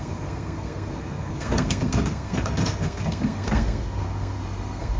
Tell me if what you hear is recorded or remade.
remade